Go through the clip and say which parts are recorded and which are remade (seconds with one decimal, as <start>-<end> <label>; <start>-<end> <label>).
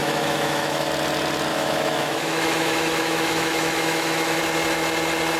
0.0-0.9 remade; 0.9-1.5 recorded; 1.5-4.4 remade; 4.4-5.4 recorded